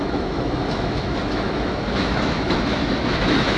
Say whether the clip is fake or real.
fake